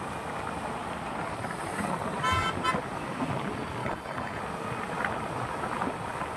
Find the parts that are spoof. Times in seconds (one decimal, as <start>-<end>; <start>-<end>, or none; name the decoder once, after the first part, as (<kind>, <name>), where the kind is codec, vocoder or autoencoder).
3.8-4.4 (codec, HILCodec)